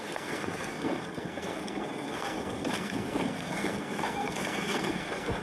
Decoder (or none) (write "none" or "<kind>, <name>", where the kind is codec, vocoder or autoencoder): codec, SNAC